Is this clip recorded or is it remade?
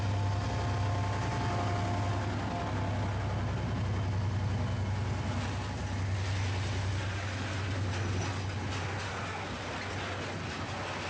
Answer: recorded